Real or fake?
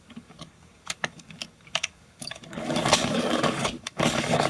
fake